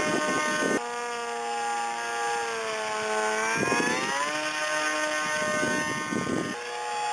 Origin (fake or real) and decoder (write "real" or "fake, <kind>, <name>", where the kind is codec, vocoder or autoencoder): real